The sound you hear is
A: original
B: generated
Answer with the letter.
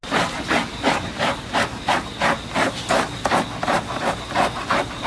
A